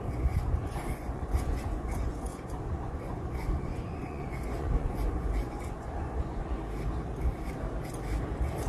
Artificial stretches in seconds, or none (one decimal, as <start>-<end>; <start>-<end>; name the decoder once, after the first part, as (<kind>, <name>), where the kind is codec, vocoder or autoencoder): 0.0-6.6 (vocoder, Vocos)